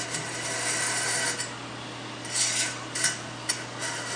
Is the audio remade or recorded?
recorded